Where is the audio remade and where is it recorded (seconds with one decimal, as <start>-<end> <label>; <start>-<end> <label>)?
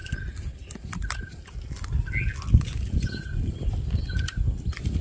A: 0.0-5.0 recorded